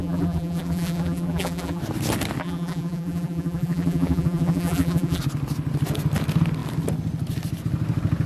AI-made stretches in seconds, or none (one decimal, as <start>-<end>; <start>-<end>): 0.0-1.8; 2.4-5.2